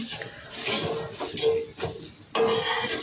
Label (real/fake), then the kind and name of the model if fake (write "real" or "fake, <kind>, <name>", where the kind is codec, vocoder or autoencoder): real